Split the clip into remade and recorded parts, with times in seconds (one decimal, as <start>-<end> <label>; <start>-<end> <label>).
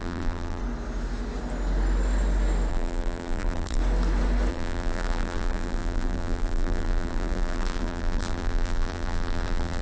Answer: 0.0-0.6 remade; 0.6-2.7 recorded; 2.7-3.8 remade; 3.8-4.5 recorded; 4.5-9.8 remade